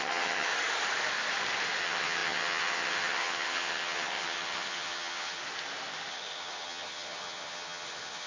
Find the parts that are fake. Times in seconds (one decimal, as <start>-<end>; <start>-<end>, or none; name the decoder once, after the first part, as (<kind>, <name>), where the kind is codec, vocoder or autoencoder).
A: 0.0-0.5 (vocoder, HiFi-GAN); 1.8-5.4; 6.1-8.3

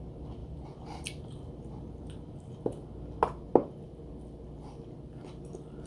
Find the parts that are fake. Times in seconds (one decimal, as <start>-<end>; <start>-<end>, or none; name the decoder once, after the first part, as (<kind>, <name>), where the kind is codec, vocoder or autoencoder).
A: 0.4-2.1 (vocoder, BigVGAN v2)

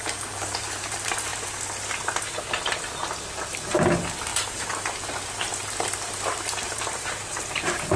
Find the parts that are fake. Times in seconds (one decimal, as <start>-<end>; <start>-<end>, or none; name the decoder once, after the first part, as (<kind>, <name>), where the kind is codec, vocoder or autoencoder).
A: 0.0-1.3 (vocoder, BigVGAN v2); 2.8-8.0